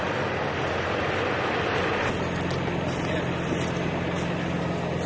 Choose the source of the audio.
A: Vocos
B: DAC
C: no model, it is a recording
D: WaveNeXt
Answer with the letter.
C